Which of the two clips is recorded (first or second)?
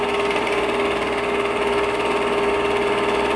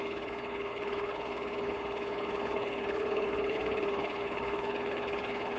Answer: first